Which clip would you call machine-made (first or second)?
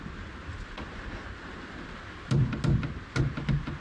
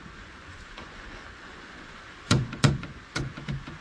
second